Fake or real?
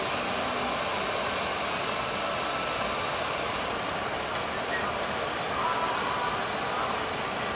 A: real